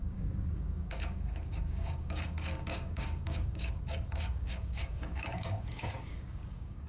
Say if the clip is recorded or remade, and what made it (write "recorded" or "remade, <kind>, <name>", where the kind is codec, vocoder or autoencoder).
remade, codec, DAC